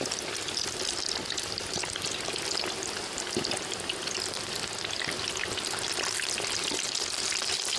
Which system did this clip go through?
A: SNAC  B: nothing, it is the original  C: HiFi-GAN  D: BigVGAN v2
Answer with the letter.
B